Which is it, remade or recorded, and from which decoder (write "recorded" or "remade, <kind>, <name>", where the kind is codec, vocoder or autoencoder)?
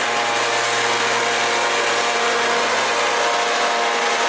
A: recorded